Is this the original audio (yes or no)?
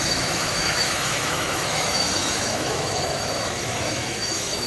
no